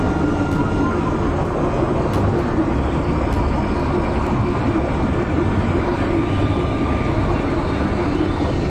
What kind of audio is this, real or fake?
real